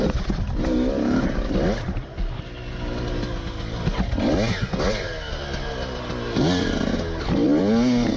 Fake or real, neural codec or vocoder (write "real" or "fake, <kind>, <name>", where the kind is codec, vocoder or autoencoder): real